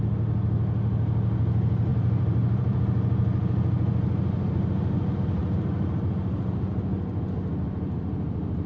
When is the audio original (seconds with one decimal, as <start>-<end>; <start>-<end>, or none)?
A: 0.0-1.9; 2.8-5.4; 6.1-8.7